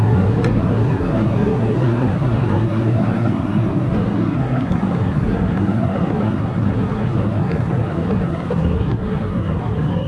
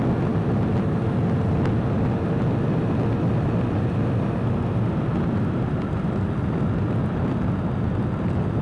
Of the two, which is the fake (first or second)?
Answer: first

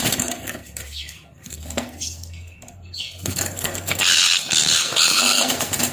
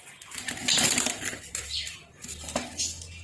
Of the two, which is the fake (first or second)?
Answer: first